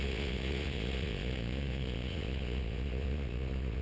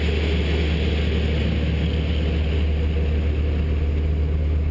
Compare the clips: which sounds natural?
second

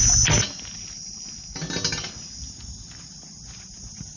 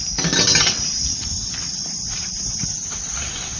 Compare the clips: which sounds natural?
first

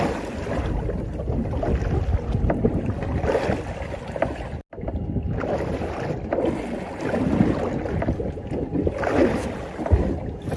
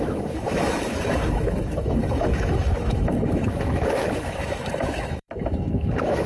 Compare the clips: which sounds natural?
first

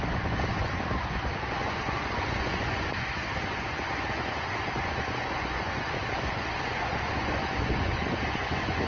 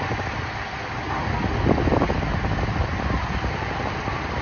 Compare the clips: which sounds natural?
second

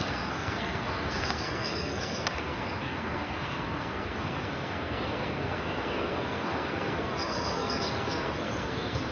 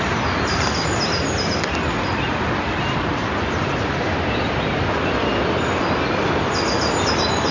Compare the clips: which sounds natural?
second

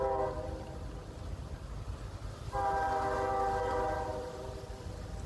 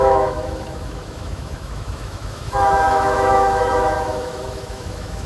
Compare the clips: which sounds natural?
first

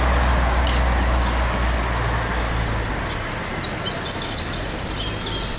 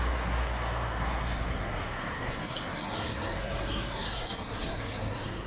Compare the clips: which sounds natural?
first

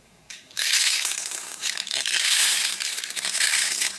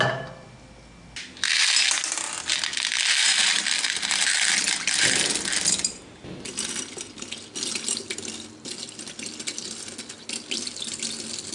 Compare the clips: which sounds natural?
second